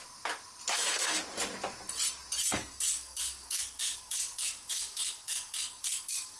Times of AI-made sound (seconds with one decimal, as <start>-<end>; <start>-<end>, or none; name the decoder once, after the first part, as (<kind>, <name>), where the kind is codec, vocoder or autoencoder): 0.7-1.2 (codec, SNAC); 2.4-6.4